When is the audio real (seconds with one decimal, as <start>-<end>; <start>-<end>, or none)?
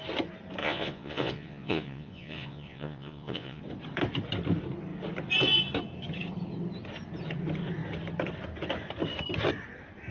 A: 0.0-0.6; 3.6-10.1